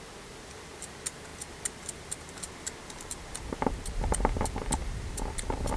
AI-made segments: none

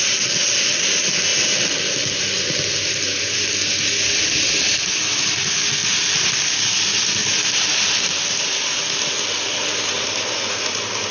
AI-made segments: none

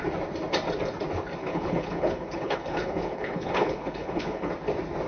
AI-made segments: 1.4-4.5 (codec, HILCodec)

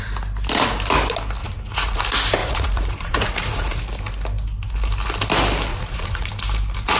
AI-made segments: 1.4-2.0 (vocoder, Vocos); 2.4-3.8; 5.7-6.3

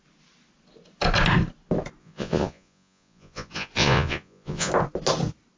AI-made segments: 2.0-4.7 (vocoder, Vocos)

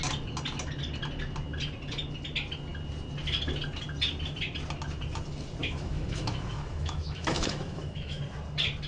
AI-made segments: 5.6-8.2 (autoencoder, DAC-VAE)

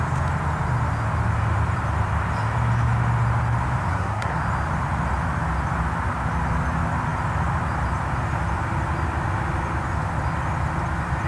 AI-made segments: 3.9-4.4 (codec, SNAC)

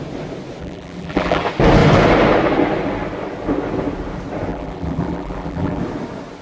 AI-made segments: 0.6-1.4 (vocoder, BigVGAN v2); 4.5-5.8